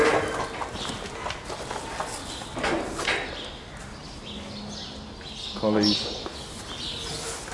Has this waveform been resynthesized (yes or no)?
no